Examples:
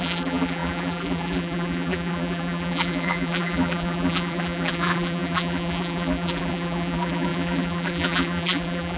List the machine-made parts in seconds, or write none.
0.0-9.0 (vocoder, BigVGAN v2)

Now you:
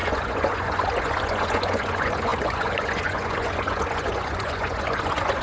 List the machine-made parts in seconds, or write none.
0.0-5.4 (vocoder, Vocos)

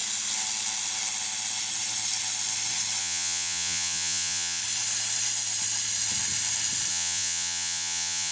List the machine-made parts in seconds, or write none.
3.0-4.6 (vocoder, Vocos); 6.9-8.3

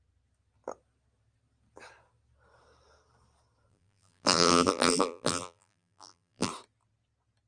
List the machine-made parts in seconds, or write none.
3.7-6.5 (vocoder, BigVGAN v2)

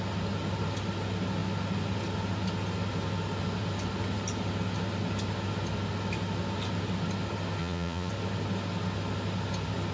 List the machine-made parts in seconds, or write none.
7.6-8.1 (vocoder, Vocos)

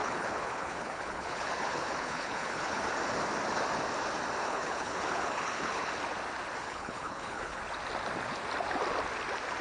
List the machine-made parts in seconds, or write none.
0.0-2.9 (codec, HILCodec); 4.4-5.9; 6.6-7.6